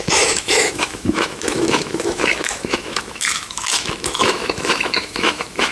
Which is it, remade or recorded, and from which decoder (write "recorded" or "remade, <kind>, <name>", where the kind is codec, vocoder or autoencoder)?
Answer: remade, autoencoder, DAC-VAE